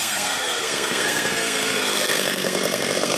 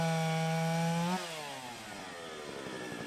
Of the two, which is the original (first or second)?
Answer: second